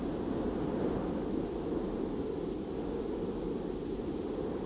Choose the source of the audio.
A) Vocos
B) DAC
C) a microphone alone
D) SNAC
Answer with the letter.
C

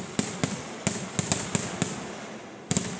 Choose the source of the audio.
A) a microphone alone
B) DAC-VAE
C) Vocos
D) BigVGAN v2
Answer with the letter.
A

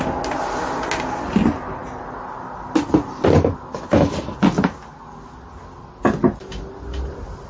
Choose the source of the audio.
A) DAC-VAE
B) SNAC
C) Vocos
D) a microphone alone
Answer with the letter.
D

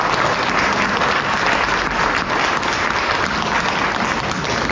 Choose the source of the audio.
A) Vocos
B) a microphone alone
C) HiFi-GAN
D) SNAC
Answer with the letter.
B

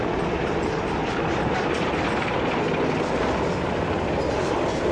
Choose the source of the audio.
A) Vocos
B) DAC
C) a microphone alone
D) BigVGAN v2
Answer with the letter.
C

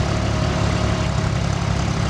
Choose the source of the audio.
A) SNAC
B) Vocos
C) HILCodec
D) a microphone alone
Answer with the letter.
D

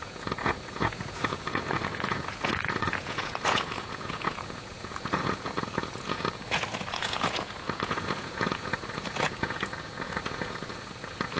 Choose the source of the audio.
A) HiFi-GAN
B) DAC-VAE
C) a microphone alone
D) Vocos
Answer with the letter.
D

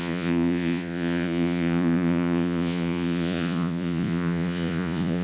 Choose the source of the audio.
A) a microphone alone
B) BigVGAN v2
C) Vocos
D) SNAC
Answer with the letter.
C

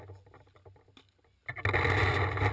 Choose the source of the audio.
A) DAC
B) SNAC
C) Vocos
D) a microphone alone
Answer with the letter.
D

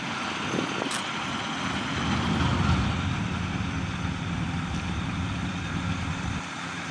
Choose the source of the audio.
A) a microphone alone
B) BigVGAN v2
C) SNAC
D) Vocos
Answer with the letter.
A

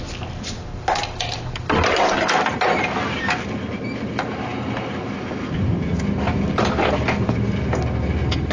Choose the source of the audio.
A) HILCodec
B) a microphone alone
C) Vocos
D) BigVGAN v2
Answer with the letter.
B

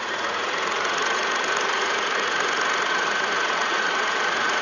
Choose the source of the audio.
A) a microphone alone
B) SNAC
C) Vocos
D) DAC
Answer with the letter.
C